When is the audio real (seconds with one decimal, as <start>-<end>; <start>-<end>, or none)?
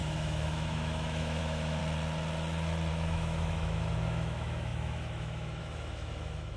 1.8-2.9